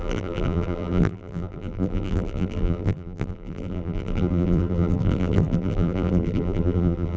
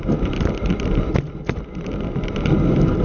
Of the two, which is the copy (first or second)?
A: first